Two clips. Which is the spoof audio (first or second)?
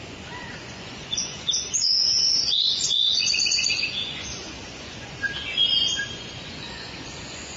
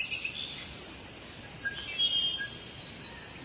first